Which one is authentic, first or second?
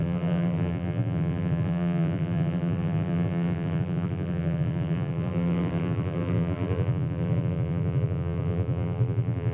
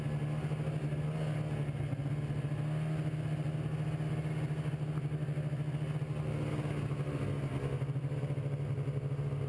second